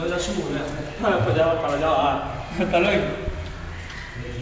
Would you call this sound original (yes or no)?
yes